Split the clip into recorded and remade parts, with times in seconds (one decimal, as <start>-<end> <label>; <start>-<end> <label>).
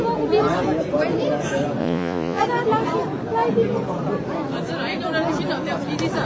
0.0-1.8 recorded; 1.8-2.4 remade; 2.4-6.2 recorded